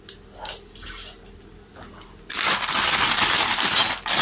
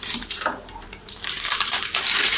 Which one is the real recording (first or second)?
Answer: first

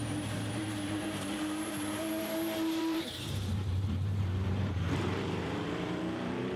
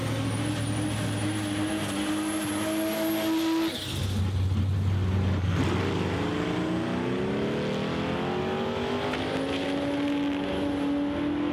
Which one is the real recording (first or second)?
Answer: second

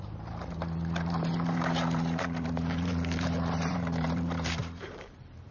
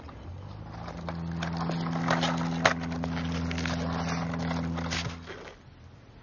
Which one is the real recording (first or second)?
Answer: second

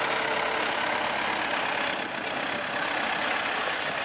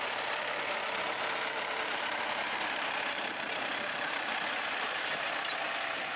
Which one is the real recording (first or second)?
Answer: first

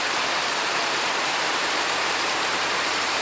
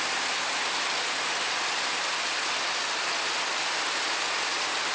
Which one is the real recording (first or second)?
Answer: second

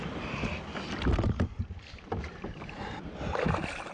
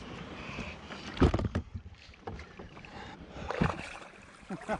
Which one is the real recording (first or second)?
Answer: first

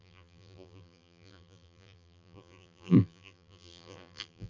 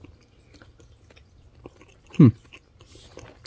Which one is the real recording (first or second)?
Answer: second